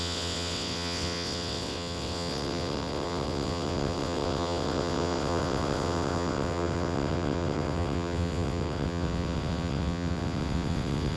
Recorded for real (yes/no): no